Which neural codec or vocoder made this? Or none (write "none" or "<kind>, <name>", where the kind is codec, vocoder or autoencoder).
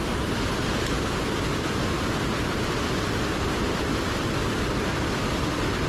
none